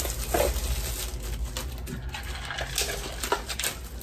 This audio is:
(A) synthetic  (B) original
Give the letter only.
B